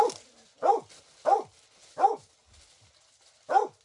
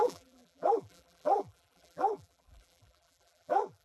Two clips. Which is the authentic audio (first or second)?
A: first